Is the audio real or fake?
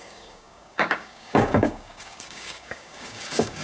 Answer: fake